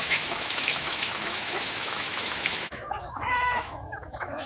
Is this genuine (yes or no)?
no